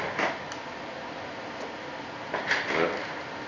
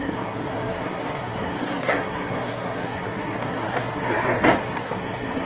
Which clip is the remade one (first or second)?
second